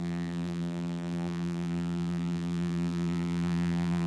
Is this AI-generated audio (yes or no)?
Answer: yes